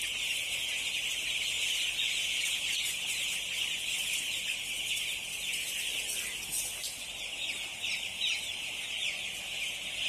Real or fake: real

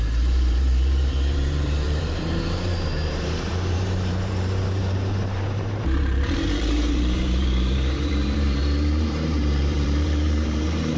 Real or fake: fake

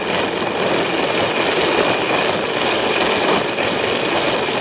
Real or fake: real